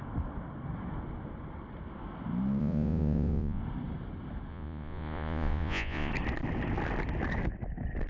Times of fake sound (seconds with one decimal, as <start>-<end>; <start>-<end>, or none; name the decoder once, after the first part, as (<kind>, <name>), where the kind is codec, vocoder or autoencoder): 2.6-3.6 (vocoder, Vocos); 4.5-6.1